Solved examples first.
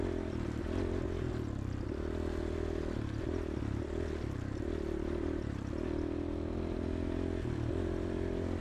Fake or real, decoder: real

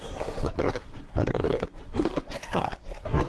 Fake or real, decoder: fake, codec, SNAC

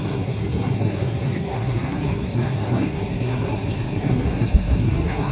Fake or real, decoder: fake, codec, SNAC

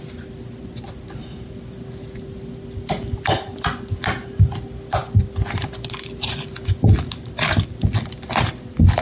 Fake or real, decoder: real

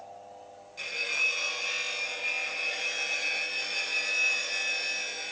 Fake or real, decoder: real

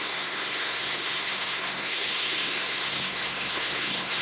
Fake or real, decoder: fake, codec, SNAC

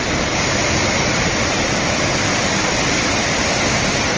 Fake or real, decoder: real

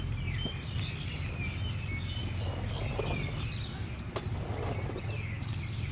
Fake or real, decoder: real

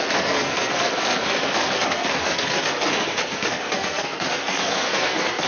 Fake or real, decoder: fake, codec, SNAC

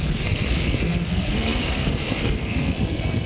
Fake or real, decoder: fake, codec, SNAC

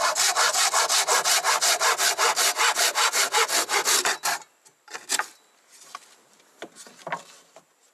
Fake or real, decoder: real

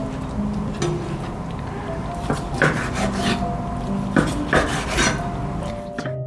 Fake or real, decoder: real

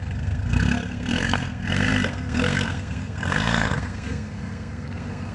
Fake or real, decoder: fake, codec, SNAC